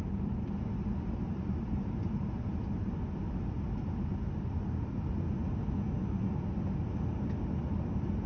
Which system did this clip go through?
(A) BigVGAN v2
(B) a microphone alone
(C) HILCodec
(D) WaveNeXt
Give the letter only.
B